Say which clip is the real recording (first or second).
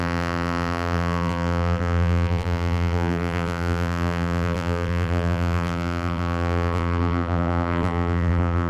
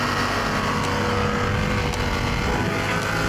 second